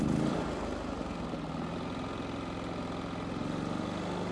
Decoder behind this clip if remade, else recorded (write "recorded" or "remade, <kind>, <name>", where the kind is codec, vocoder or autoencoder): recorded